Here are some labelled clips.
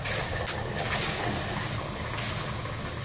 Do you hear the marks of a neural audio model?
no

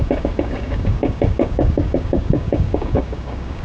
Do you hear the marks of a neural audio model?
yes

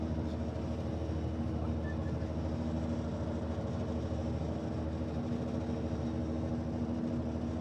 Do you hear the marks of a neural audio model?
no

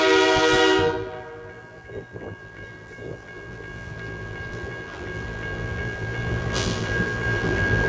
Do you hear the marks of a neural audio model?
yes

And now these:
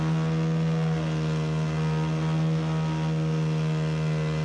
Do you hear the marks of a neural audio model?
no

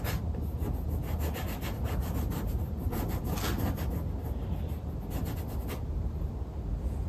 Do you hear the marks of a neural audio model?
no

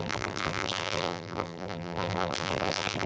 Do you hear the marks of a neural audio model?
yes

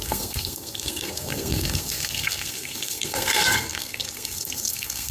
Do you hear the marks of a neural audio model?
yes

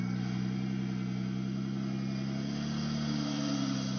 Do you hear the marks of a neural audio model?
no